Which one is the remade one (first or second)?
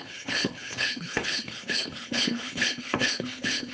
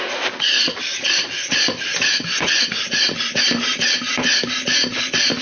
first